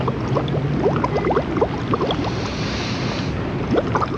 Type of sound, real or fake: real